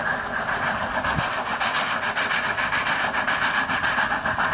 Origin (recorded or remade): recorded